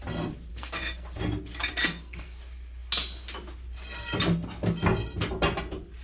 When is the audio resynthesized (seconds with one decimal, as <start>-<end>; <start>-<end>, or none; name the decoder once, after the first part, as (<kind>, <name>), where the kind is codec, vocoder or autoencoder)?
0.5-1.2 (codec, SNAC); 1.8-2.4